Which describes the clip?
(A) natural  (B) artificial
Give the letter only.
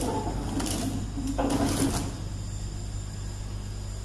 A